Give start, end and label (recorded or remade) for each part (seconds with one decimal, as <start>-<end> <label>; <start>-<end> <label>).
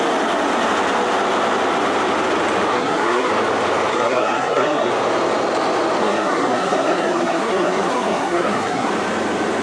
0.0-2.7 recorded; 2.7-3.3 remade; 3.3-3.9 recorded; 3.9-4.9 remade; 4.9-6.0 recorded; 6.0-8.9 remade; 8.9-9.6 recorded